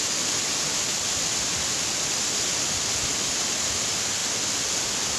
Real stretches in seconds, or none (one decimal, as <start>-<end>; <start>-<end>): 0.0-5.2